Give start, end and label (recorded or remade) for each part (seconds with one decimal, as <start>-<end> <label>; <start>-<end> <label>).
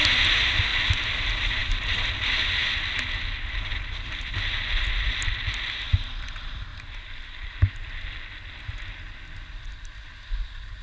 0.0-0.7 recorded; 0.7-1.2 remade; 1.2-1.6 recorded; 1.6-2.2 remade; 2.2-6.7 recorded; 6.7-7.7 remade; 7.7-10.8 recorded